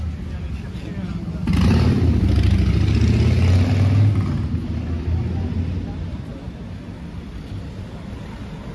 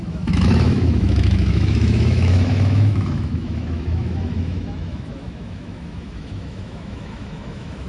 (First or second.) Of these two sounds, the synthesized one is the second